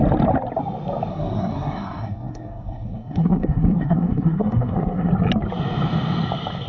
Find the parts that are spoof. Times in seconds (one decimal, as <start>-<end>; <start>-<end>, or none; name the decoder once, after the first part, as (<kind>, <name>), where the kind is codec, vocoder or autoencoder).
1.1-5.1 (codec, SNAC)

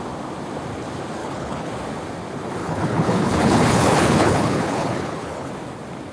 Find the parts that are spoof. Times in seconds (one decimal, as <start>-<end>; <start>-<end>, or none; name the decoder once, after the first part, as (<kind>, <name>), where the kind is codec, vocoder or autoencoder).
1.2-1.7 (codec, HILCodec); 2.6-5.5

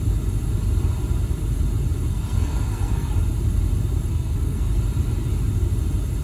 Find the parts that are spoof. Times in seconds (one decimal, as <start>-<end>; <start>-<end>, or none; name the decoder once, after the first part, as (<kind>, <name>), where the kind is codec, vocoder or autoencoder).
2.1-3.1 (codec, SNAC); 4.1-4.8

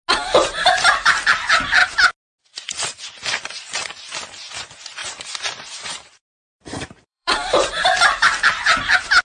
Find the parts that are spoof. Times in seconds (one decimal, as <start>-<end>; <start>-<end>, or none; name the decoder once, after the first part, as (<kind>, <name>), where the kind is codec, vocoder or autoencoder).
5.0-8.0 (vocoder, BigVGAN v2)

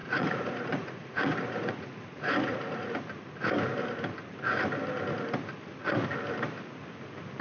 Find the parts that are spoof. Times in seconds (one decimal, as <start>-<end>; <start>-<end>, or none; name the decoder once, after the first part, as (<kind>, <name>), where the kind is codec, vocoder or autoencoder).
0.0-2.9 (vocoder, Vocos)